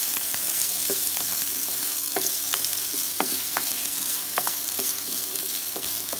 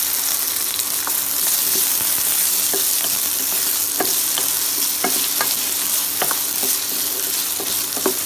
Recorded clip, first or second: second